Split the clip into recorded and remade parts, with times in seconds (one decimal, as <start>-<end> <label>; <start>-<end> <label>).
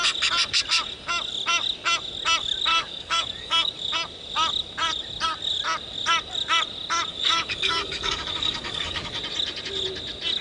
0.0-2.7 recorded; 2.7-3.7 remade; 3.7-7.1 recorded; 7.1-9.2 remade; 9.2-10.4 recorded